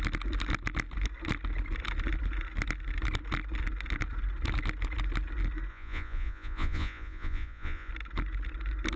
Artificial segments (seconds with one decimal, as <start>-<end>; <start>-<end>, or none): 5.7-7.9